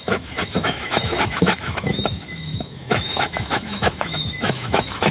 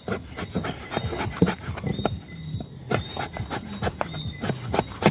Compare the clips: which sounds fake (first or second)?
first